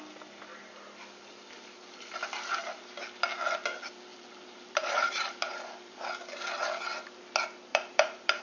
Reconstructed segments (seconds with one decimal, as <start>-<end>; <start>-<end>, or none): 4.1-6.1; 7.7-8.4

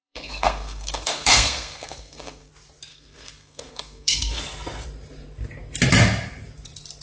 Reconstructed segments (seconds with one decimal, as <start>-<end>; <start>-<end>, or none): 0.0-2.5; 2.9-4.4

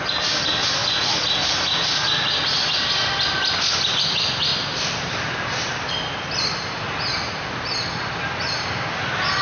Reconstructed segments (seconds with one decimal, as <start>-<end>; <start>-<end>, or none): none

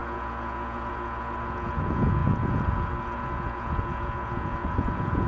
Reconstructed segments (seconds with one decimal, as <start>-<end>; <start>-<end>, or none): 0.0-5.3

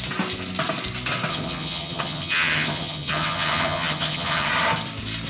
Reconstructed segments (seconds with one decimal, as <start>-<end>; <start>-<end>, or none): 1.3-4.5

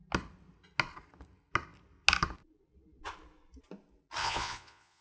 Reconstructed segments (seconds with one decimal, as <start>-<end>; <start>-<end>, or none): 4.2-5.0

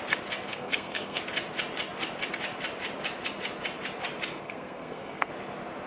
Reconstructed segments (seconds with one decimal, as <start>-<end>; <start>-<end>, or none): 0.5-1.2; 4.3-5.3